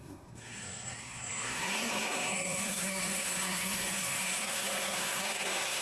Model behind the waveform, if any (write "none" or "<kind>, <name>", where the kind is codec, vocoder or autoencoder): codec, SNAC